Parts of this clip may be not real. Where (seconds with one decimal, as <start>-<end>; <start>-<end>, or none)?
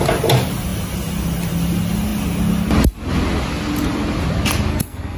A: 4.7-5.2